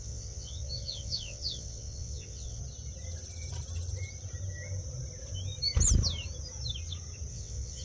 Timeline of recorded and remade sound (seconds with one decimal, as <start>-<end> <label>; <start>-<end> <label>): 0.0-2.6 remade; 2.6-7.3 recorded; 7.3-7.8 remade